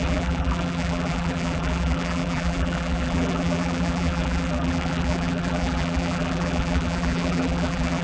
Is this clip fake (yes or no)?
yes